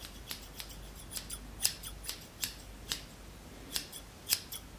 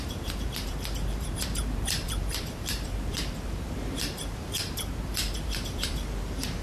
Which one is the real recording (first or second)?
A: first